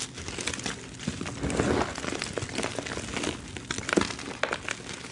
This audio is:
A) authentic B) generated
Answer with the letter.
A